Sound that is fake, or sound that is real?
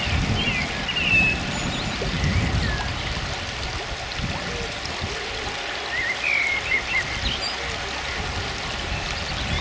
real